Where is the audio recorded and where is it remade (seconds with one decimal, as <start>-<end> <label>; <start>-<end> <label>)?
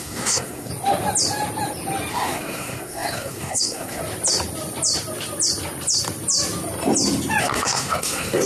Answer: 0.0-0.7 remade; 0.7-2.1 recorded; 2.1-4.0 remade; 4.0-7.4 recorded; 7.4-8.5 remade